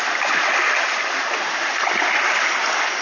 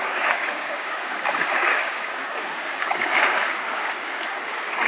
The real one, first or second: first